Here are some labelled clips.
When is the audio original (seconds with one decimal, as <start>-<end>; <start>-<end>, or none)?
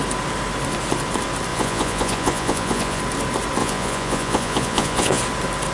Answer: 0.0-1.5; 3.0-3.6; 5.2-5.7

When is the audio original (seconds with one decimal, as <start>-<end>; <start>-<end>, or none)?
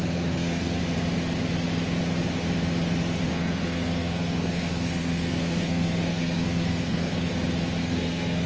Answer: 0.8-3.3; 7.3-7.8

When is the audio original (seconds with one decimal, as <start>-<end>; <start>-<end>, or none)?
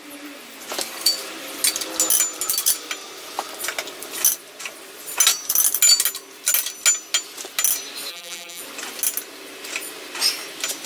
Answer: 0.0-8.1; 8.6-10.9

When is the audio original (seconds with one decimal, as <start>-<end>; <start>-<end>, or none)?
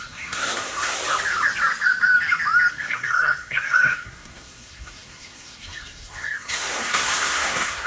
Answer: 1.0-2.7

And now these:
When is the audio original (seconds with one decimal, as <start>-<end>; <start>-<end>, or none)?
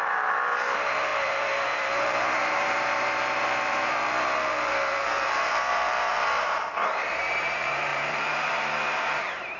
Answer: none